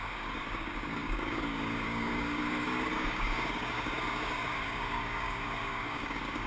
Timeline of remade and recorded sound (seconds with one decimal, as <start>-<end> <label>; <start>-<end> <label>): 0.0-6.5 remade